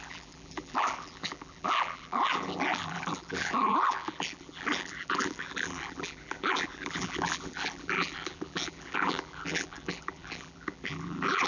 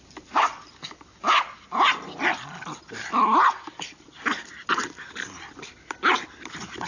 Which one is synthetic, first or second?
first